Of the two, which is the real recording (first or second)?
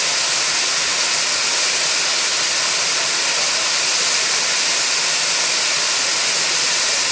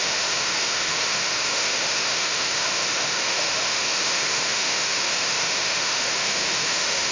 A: first